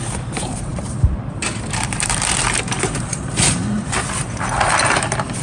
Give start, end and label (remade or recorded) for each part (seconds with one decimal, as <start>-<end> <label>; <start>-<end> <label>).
0.0-5.4 remade